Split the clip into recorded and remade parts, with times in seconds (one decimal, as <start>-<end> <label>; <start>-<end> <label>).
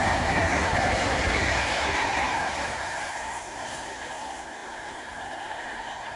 0.0-6.2 remade